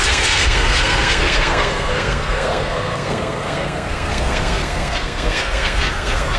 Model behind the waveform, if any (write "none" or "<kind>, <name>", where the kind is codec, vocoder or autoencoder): codec, SNAC